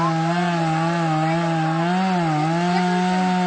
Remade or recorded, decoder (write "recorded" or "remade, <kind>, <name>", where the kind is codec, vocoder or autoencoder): recorded